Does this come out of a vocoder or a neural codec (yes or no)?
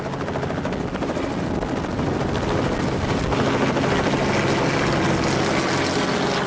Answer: no